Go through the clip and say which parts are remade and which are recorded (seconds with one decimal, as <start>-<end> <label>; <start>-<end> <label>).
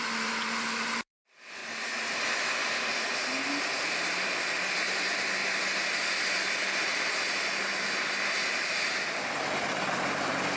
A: 0.0-1.6 remade; 1.6-3.8 recorded; 3.8-5.4 remade; 5.4-9.2 recorded; 9.2-10.6 remade